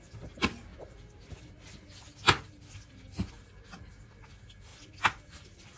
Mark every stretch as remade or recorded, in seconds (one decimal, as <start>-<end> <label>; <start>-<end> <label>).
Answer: 0.0-5.8 recorded